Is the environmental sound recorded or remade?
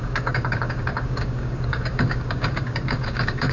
remade